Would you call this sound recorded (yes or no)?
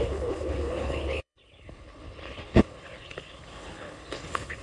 no